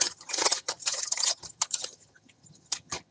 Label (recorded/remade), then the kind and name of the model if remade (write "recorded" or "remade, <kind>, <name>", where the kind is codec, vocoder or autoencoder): remade, vocoder, HiFi-GAN